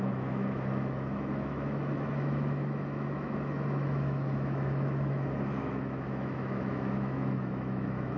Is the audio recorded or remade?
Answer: remade